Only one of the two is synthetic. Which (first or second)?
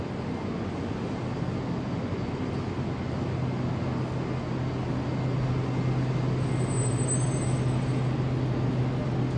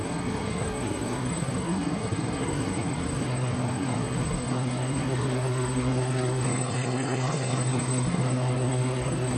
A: second